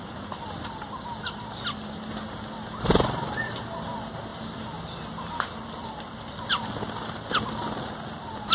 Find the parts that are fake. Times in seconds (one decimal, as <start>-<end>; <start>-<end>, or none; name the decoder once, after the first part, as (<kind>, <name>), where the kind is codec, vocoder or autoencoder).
none